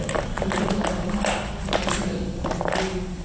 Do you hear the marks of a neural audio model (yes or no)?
no